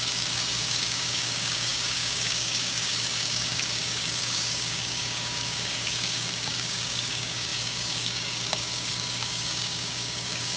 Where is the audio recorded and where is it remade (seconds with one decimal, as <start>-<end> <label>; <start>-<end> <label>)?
0.0-10.6 remade